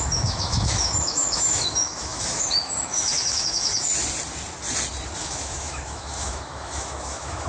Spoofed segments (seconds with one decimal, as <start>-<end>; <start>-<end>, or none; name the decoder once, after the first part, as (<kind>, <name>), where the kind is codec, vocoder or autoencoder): 0.0-3.9 (autoencoder, DAC-VAE); 5.2-7.5